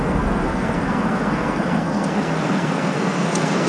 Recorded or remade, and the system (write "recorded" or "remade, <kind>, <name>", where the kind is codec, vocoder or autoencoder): remade, codec, SNAC